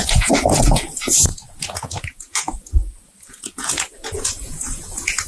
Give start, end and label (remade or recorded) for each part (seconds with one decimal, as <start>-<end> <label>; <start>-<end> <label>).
0.0-5.3 remade